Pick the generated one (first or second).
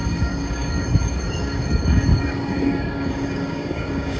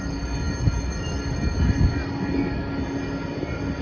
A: first